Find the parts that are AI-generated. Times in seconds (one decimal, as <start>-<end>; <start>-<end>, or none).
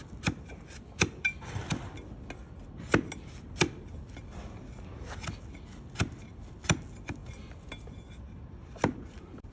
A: none